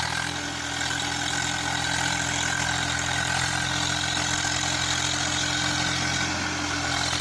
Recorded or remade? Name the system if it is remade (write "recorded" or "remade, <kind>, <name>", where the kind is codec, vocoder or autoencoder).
recorded